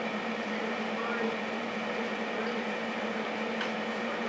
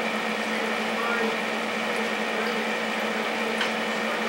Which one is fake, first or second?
first